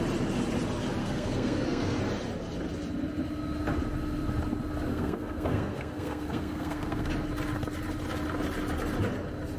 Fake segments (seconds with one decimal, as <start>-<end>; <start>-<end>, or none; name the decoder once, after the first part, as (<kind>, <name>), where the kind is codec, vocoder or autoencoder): 1.0-2.0 (codec, SNAC); 4.9-7.1